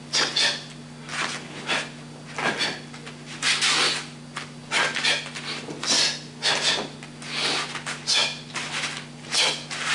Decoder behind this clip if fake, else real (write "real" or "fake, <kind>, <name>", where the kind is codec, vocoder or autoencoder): real